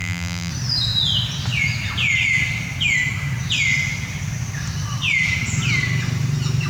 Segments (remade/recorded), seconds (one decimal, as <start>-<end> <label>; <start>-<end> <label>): 0.0-0.5 remade; 0.5-6.7 recorded